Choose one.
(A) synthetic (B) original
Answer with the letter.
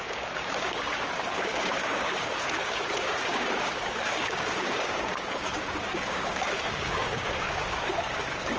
A